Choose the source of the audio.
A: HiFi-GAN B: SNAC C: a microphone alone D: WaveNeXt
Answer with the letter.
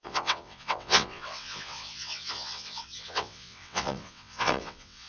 D